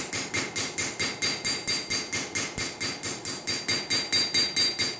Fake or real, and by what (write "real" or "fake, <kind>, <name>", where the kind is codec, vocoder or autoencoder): real